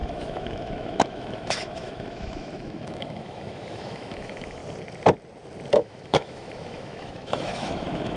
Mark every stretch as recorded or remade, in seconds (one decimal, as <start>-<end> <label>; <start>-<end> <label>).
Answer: 0.0-4.6 remade; 4.6-5.7 recorded; 5.7-8.2 remade